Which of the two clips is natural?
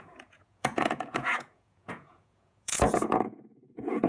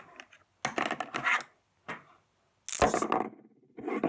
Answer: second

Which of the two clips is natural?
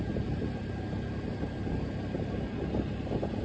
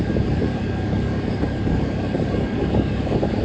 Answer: first